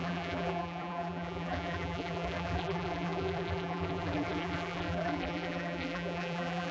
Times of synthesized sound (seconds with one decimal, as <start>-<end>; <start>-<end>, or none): 0.0-6.7